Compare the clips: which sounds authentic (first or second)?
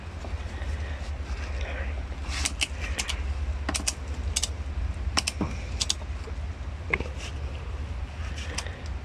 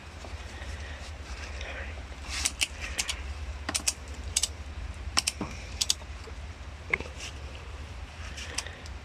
first